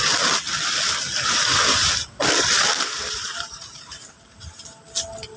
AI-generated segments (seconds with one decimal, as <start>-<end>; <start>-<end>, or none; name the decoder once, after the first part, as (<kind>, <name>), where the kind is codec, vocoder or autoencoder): 2.7-4.6 (vocoder, BigVGAN v2)